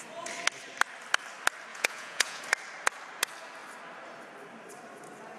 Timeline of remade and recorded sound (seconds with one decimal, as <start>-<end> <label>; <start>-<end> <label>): 0.0-1.7 recorded; 1.7-2.4 remade; 2.4-5.4 recorded